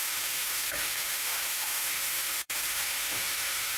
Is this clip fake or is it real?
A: fake